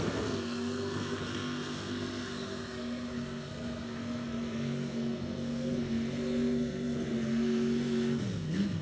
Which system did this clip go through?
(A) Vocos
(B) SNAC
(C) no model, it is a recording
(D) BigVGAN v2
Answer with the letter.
B